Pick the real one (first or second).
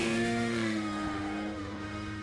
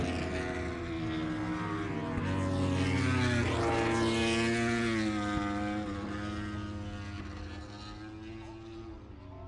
second